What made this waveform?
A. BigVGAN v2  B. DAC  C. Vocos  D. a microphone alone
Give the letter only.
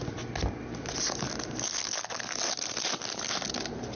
D